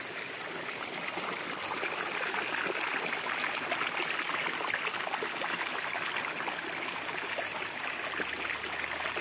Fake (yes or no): no